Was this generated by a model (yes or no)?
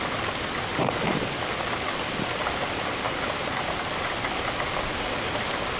no